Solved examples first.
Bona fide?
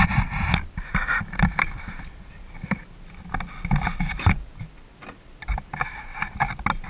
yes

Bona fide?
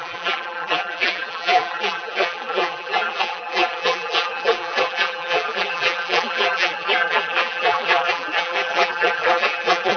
no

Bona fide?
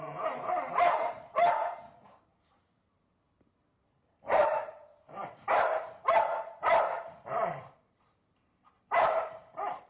no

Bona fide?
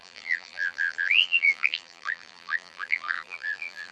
no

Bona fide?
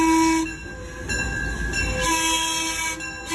yes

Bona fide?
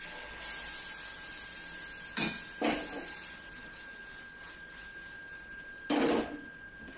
yes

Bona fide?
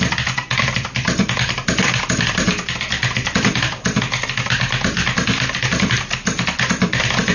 yes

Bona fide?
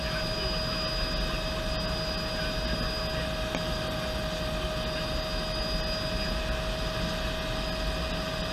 yes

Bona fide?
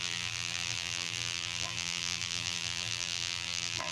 no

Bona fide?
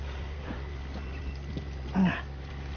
yes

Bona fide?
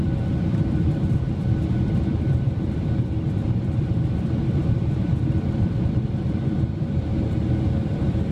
no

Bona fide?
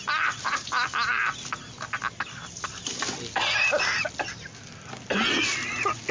yes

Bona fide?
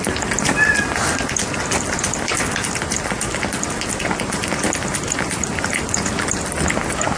yes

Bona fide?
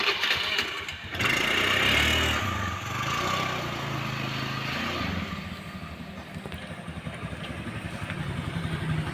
yes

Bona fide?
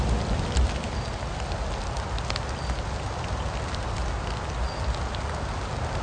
yes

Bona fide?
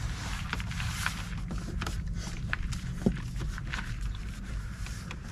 no